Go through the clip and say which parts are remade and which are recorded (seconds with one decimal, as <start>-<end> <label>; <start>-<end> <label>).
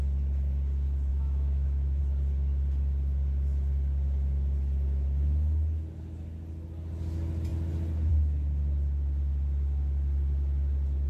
0.0-1.1 recorded; 1.1-2.0 remade; 2.0-11.1 recorded